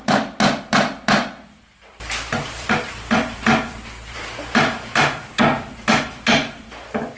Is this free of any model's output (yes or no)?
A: no